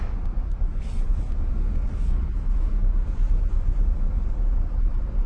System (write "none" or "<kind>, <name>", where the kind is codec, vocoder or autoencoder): none